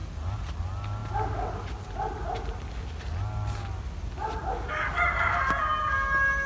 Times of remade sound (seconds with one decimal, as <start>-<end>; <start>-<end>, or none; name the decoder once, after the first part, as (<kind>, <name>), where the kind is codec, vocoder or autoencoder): none